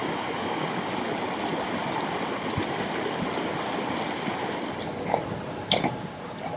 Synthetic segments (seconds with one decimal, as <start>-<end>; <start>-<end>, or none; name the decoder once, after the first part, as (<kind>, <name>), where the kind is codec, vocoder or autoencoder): 0.0-0.9 (codec, DAC)